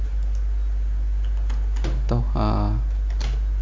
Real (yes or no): yes